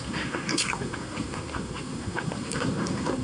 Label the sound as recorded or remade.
remade